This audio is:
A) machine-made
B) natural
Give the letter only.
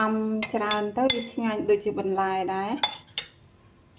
B